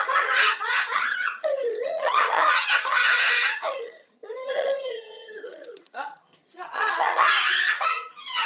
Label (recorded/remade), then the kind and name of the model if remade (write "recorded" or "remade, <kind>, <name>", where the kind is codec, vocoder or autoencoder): remade, vocoder, HiFi-GAN